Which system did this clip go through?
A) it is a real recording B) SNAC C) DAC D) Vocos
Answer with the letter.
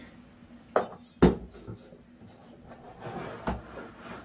A